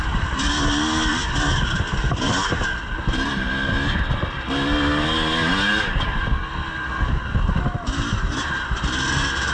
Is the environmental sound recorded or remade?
recorded